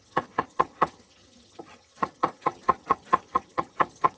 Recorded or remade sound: remade